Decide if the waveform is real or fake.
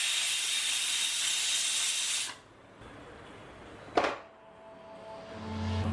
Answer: real